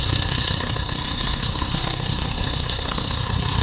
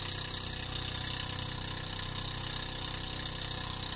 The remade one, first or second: first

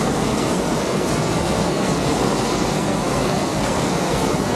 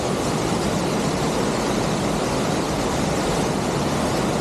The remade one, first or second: first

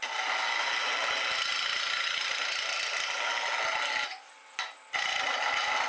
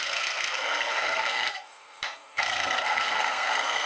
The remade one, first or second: second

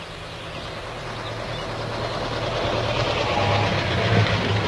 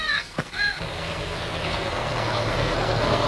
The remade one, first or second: second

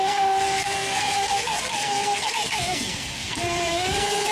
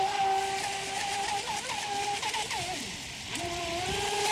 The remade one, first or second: first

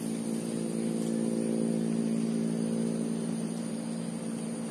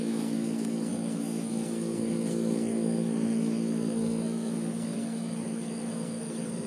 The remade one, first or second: second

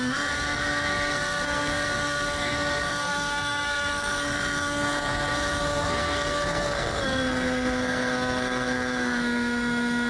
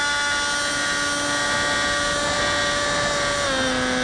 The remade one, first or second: first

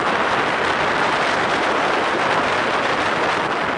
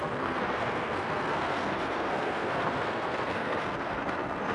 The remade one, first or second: second